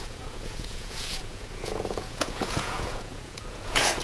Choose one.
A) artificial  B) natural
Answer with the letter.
A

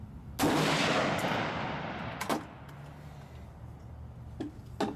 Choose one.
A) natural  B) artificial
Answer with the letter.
A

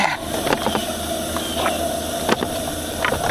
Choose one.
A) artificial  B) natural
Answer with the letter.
B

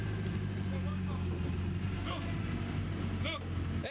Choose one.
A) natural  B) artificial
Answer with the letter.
A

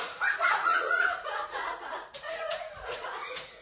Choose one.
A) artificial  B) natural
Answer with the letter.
A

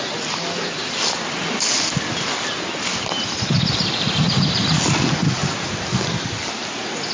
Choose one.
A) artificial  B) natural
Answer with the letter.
B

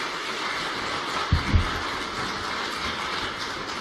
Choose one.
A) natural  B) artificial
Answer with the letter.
A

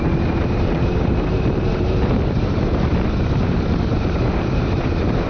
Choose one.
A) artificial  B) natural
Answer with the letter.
A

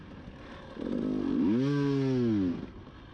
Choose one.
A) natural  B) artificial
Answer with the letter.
A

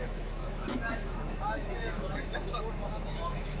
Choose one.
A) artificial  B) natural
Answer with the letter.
A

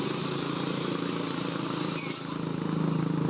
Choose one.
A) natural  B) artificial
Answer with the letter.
A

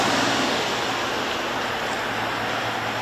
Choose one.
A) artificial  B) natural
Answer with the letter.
B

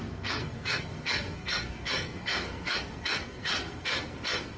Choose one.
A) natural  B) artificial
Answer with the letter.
B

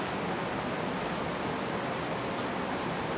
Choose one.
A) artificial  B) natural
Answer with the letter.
B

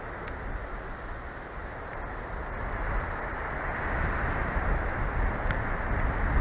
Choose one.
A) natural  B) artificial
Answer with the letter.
A